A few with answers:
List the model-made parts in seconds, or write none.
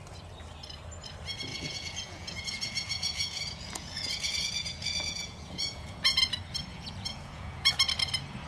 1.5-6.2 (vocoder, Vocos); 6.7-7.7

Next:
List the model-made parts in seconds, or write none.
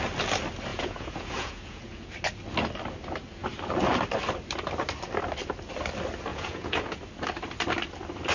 0.7-2.1 (vocoder, Vocos); 6.3-7.0